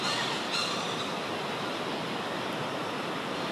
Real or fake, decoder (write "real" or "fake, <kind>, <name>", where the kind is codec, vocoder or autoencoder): real